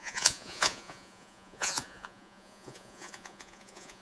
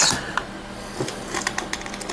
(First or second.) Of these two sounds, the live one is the second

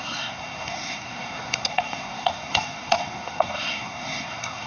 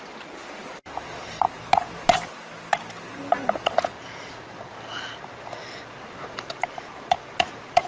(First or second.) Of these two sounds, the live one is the second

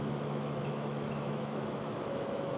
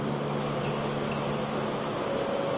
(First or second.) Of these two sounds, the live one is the second